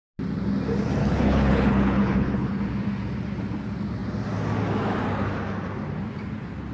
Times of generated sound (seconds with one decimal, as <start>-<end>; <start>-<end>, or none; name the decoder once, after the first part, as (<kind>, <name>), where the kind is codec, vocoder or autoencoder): 1.0-2.6 (codec, HILCodec)